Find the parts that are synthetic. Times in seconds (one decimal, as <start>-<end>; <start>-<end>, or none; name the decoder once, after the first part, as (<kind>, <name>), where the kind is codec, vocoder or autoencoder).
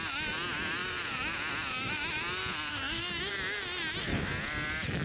2.7-3.3 (codec, SNAC)